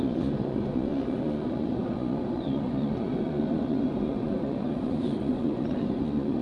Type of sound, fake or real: fake